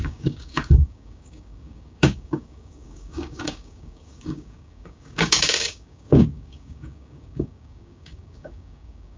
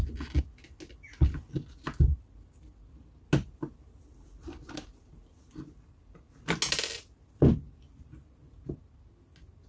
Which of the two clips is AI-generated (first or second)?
first